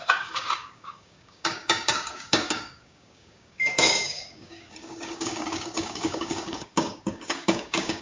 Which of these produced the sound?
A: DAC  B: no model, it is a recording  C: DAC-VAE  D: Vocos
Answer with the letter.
A